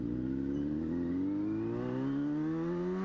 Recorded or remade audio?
recorded